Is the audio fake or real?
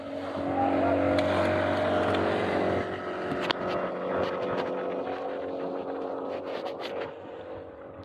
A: real